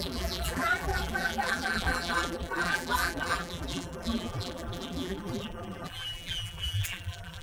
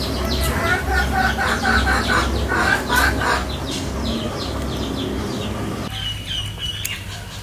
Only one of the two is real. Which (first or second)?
second